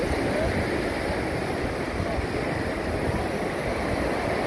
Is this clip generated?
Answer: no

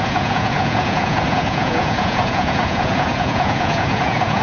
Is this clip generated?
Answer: yes